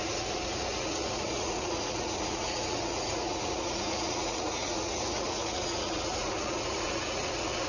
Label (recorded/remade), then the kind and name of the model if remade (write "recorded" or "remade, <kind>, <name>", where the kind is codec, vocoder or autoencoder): remade, vocoder, Vocos